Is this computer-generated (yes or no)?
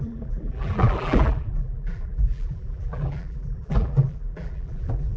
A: yes